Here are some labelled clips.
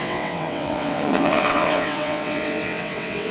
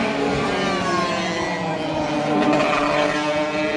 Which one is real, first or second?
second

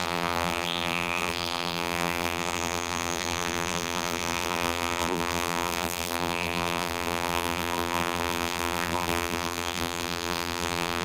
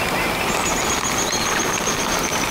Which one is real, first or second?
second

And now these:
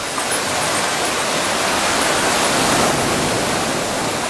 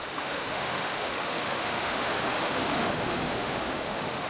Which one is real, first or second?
first